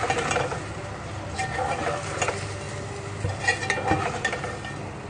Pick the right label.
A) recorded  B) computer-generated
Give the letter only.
A